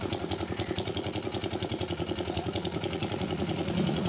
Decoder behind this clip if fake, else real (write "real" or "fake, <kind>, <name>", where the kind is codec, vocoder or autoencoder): fake, vocoder, Vocos